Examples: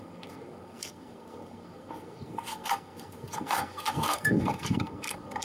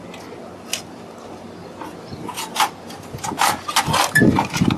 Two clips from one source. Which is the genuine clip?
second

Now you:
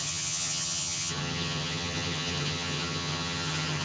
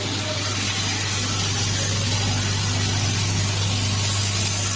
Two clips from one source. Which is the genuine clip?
second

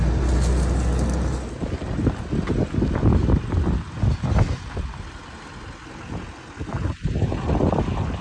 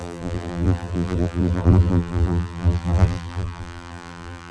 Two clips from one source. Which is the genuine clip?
first